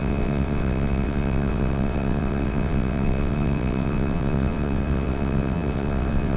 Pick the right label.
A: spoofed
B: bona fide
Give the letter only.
A